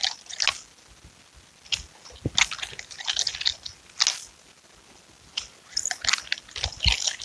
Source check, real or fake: real